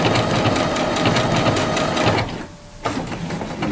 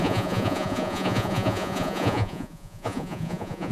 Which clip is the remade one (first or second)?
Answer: second